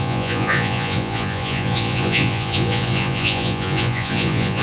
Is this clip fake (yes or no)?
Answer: yes